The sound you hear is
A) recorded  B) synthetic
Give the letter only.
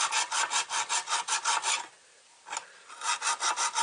A